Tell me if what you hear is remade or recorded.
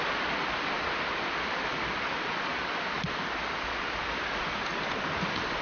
recorded